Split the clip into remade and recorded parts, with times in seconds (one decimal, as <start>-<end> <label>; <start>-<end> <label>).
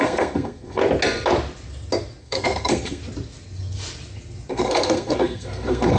0.0-0.8 remade; 0.8-2.2 recorded; 2.2-3.0 remade; 3.0-4.5 recorded; 4.5-6.0 remade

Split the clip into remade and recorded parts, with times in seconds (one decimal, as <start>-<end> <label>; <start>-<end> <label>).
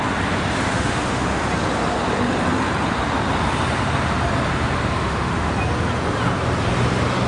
0.0-0.7 recorded; 0.7-1.4 remade; 1.4-5.0 recorded; 5.0-5.5 remade; 5.5-7.3 recorded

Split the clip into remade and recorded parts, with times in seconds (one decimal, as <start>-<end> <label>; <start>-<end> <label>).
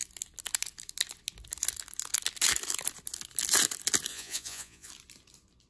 0.0-4.1 recorded; 4.1-4.9 remade; 4.9-5.7 recorded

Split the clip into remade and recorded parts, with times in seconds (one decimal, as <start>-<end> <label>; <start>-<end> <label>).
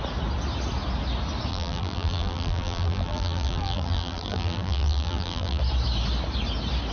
0.0-1.5 recorded; 1.5-5.6 remade; 5.6-6.9 recorded